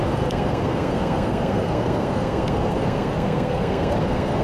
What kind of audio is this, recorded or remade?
remade